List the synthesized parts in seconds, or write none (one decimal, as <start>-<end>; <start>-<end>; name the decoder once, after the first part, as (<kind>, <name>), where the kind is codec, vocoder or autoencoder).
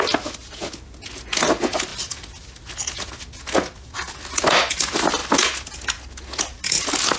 none